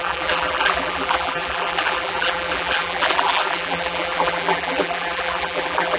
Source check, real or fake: fake